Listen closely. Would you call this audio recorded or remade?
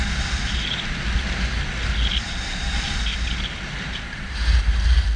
recorded